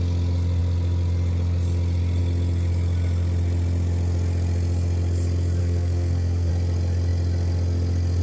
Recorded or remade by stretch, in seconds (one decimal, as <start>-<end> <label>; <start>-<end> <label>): 0.0-5.6 recorded; 5.6-6.5 remade; 6.5-8.2 recorded